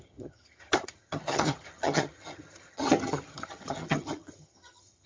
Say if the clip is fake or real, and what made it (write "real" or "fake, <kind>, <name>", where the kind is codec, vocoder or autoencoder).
fake, vocoder, HiFi-GAN